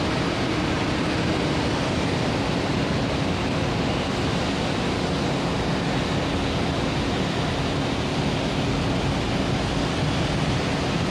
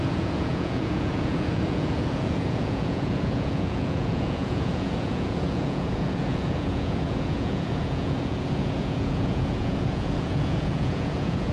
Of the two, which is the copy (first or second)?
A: second